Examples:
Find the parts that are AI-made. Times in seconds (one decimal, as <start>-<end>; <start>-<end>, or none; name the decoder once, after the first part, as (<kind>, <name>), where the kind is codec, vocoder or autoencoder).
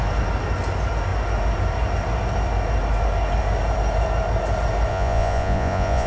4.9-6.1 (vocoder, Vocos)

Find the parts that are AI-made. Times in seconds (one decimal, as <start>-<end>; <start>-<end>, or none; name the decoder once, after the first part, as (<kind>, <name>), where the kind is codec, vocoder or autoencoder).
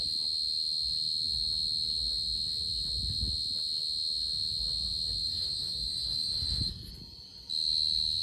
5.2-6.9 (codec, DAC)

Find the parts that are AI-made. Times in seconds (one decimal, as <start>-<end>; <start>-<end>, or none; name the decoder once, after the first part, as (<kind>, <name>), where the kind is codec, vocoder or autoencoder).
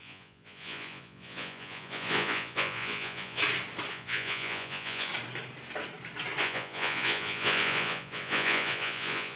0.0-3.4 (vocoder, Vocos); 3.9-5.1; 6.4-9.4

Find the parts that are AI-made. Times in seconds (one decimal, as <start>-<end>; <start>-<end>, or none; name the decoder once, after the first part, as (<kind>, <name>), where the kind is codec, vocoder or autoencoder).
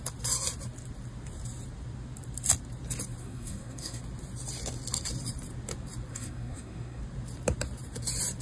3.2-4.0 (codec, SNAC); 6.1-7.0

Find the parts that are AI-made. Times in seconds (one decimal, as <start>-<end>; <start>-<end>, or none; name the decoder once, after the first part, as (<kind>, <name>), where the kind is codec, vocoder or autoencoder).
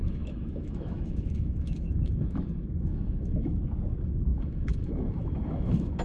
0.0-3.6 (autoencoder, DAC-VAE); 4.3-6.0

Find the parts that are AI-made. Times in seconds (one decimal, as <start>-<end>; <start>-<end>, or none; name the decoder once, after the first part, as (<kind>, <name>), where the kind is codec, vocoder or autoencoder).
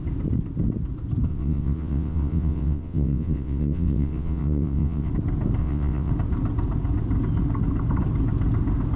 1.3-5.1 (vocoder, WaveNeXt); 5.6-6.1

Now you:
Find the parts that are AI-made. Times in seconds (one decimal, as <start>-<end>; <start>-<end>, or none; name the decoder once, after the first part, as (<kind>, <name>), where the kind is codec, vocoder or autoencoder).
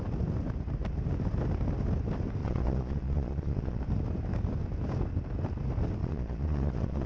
2.4-3.8 (vocoder, Vocos); 6.0-7.1